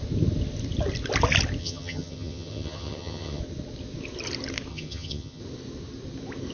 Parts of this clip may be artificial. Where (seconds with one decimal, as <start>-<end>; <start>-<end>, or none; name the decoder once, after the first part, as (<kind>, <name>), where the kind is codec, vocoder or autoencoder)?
1.6-3.4 (vocoder, HiFi-GAN); 4.7-5.4